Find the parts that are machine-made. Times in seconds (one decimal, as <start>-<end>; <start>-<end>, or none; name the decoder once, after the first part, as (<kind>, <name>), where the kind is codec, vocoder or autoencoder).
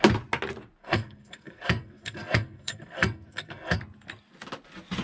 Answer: 0.8-3.8 (codec, SNAC)